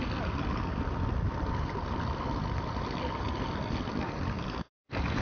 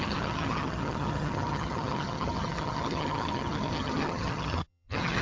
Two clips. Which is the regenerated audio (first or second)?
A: second